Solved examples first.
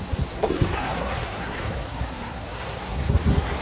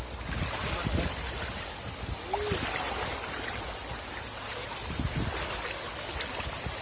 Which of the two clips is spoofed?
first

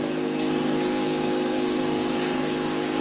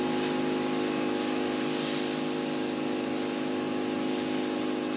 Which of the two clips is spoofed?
first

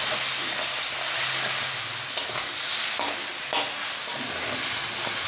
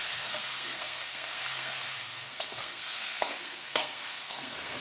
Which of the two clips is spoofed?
second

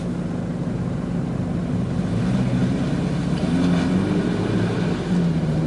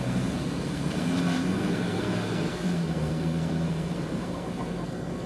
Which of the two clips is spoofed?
second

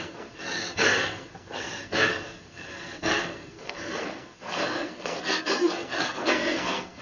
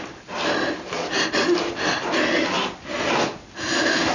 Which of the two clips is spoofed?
first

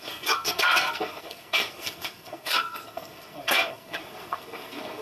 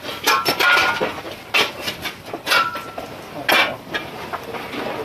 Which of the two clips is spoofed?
first